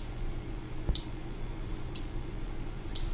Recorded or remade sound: remade